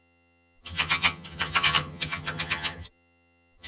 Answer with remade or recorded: remade